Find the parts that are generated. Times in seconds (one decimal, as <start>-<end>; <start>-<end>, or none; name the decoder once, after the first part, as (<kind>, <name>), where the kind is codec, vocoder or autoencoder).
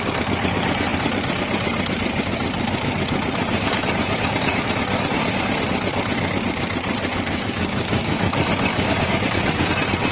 7.1-8.2 (codec, DAC); 8.7-9.7